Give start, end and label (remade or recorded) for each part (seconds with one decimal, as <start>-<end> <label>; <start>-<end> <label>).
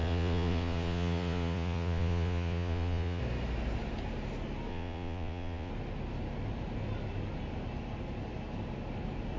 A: 0.0-3.2 remade; 3.2-4.7 recorded; 4.7-5.7 remade; 5.7-9.4 recorded